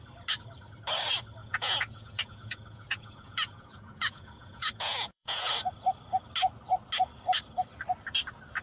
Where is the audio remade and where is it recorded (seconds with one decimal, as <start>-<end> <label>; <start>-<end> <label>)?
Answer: 0.0-1.4 recorded; 1.4-5.5 remade; 5.5-8.6 recorded